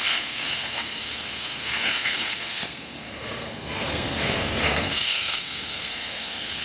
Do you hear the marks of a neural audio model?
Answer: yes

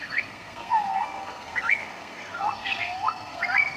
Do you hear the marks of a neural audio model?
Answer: yes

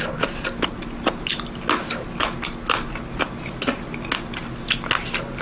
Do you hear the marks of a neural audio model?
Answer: no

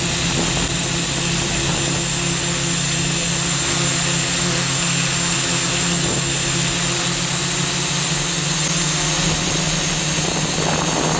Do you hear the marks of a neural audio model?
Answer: no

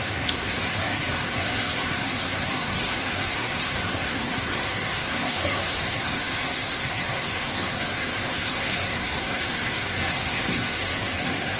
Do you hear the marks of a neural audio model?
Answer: yes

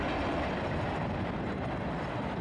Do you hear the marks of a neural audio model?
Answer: no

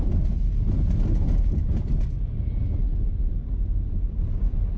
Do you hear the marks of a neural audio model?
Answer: no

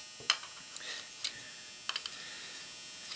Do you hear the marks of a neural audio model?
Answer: no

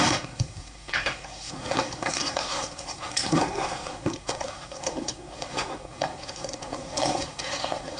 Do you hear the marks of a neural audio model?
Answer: yes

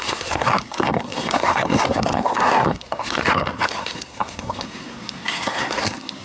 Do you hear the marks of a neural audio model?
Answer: yes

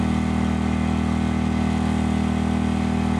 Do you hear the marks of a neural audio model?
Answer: no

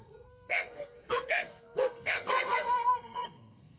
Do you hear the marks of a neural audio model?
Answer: yes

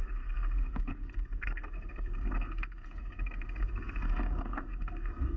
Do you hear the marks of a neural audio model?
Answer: yes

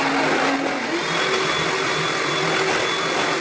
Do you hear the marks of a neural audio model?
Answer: no